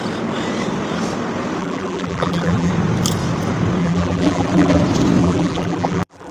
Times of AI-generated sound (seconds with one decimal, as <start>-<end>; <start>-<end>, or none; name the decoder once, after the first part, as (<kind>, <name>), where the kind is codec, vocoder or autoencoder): 1.6-2.7 (vocoder, BigVGAN v2); 3.8-4.8; 5.2-6.3